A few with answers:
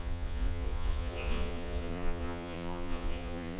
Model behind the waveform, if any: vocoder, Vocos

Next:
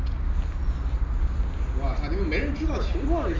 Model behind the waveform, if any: none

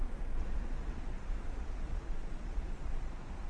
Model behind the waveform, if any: vocoder, Vocos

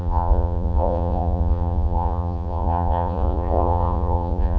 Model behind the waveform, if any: vocoder, Vocos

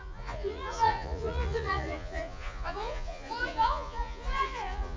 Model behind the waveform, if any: vocoder, Vocos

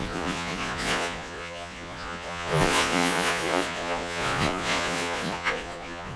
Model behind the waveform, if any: vocoder, Vocos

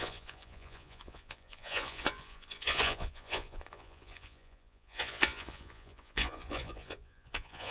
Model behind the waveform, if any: vocoder, Vocos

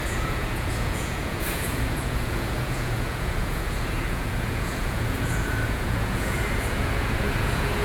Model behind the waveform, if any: vocoder, Vocos